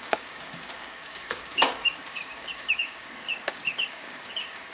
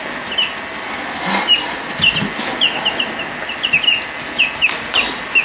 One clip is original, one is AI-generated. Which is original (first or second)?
second